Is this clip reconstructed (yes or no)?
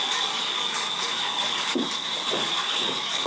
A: yes